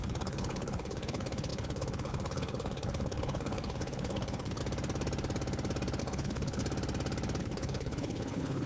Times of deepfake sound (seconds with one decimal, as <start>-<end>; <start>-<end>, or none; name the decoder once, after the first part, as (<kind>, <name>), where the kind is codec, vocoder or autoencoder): 0.0-4.6 (codec, HILCodec); 6.0-6.6; 7.4-8.7